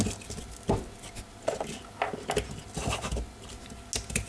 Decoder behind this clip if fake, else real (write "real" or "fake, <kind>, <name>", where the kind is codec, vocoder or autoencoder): real